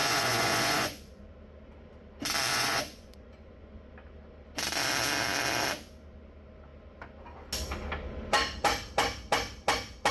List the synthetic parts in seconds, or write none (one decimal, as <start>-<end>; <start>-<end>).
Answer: 0.0-1.3; 2.5-3.9